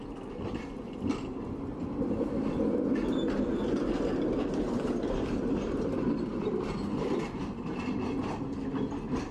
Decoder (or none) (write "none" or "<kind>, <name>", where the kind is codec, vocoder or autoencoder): none